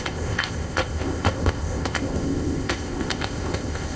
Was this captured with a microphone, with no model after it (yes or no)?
no